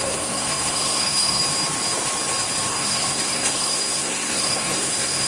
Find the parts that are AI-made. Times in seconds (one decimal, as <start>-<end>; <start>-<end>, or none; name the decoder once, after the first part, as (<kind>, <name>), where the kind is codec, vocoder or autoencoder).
0.0-1.4 (codec, SNAC); 2.7-5.3